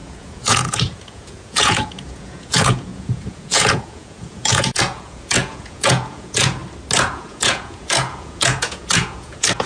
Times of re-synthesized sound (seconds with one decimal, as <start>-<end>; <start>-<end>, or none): 0.0-6.6; 7.1-9.7